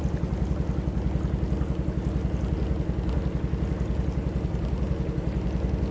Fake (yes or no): no